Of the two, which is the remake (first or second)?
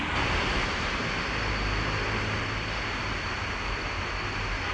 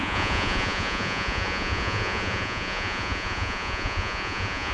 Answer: second